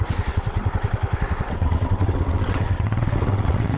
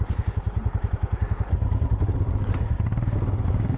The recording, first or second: second